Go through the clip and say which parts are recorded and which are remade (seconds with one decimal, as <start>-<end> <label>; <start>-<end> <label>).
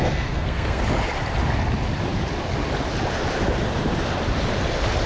0.0-0.8 remade; 0.8-5.1 recorded